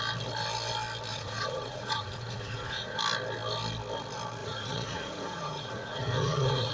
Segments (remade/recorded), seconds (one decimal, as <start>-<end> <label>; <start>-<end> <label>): 0.0-1.1 recorded; 1.1-3.0 remade; 3.0-4.4 recorded; 4.4-6.7 remade